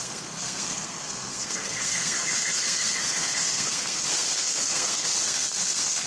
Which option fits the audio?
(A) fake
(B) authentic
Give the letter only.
A